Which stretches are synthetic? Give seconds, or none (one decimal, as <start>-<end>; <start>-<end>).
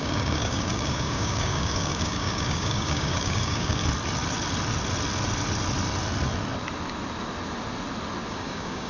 0.0-3.8; 8.3-8.9